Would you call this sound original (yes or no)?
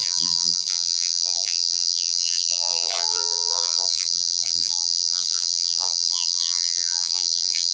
no